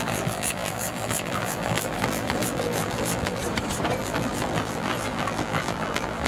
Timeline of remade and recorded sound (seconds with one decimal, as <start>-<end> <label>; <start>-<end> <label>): 0.0-3.4 remade; 3.4-4.0 recorded; 4.0-6.3 remade

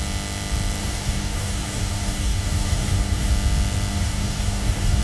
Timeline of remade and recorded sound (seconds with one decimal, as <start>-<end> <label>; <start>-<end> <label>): 0.0-0.8 recorded; 0.8-3.3 remade; 3.3-3.9 recorded; 3.9-5.0 remade

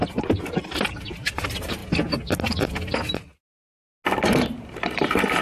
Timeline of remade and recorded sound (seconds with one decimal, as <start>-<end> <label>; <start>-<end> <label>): 0.0-1.8 remade; 1.8-5.0 recorded; 5.0-5.4 remade

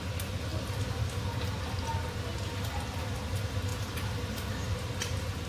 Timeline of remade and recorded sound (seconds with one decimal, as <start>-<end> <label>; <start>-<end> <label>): 0.0-3.7 recorded; 3.7-4.5 remade; 4.5-5.5 recorded

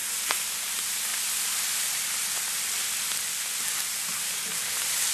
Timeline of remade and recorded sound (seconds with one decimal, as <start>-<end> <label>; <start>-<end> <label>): 0.0-1.1 remade; 1.1-3.6 recorded; 3.6-5.1 remade

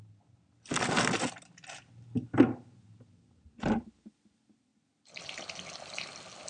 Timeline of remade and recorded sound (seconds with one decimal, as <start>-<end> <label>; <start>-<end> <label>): 0.0-6.5 recorded

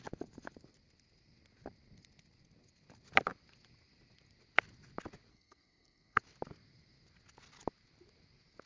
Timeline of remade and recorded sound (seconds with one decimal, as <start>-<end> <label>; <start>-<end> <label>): 0.0-5.3 recorded; 5.3-6.2 remade; 6.2-8.7 recorded